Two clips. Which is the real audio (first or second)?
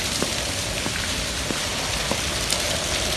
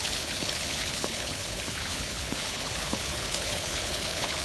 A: first